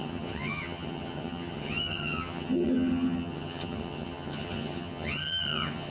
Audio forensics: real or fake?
fake